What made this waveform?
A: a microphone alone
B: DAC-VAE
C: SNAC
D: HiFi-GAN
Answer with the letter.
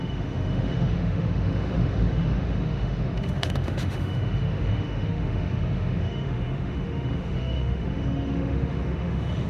B